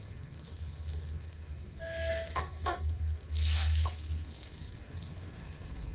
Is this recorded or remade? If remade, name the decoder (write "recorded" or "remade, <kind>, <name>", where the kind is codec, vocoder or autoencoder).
remade, codec, SNAC